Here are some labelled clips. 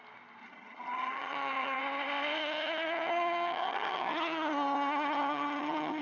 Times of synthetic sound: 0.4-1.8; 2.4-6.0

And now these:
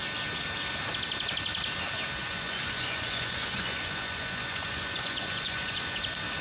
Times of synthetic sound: 2.2-6.0